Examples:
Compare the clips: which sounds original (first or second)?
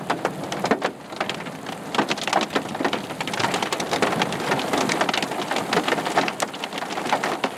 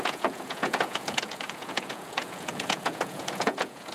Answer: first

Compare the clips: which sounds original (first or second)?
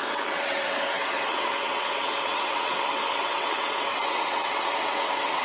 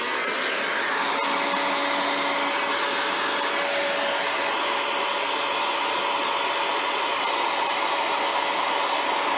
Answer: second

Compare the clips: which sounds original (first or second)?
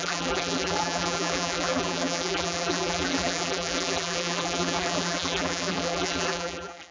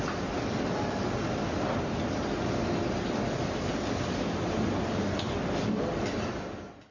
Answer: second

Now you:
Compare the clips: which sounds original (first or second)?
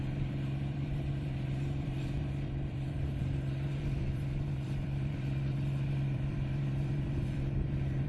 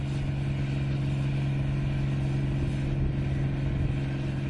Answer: second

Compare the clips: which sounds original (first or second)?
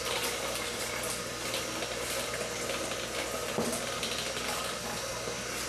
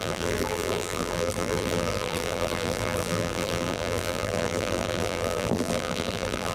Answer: first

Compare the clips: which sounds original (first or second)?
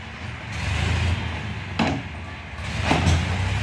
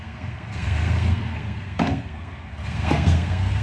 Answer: first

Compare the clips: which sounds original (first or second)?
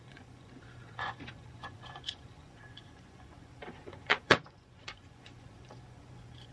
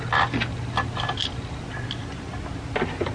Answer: second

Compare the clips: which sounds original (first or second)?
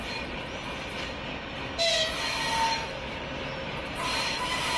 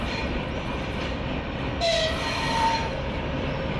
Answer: first